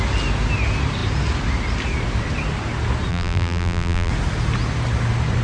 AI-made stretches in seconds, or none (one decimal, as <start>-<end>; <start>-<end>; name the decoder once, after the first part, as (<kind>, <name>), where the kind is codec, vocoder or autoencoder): 3.1-4.1 (vocoder, BigVGAN v2)